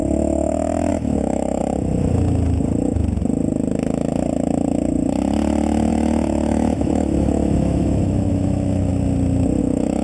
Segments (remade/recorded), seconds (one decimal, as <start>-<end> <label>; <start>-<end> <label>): 0.0-0.9 recorded; 0.9-1.6 remade; 1.6-5.9 recorded; 5.9-8.9 remade; 8.9-9.6 recorded; 9.6-10.0 remade